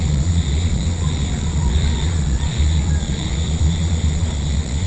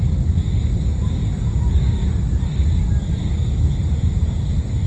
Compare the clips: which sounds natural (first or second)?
second